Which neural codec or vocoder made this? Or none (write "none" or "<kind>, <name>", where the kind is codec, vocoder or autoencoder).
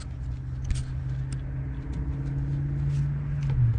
none